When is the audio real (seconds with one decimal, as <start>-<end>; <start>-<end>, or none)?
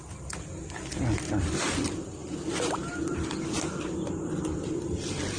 0.0-2.2; 3.0-5.4